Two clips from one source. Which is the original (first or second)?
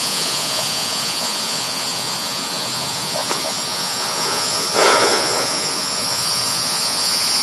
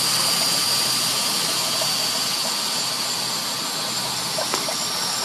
second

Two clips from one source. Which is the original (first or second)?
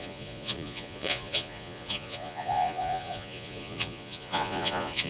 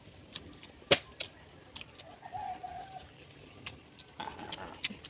second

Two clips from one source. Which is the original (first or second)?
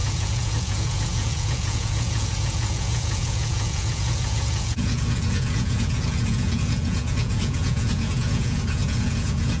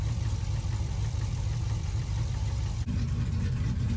second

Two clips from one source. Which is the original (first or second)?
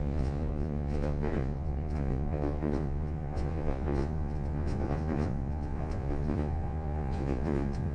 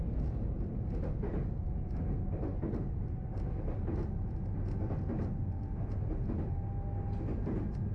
second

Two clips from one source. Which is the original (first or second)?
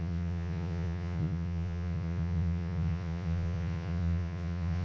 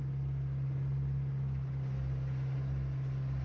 second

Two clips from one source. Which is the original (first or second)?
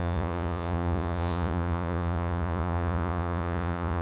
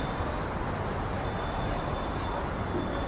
second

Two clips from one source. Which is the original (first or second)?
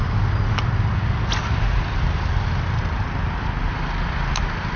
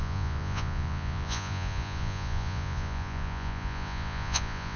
first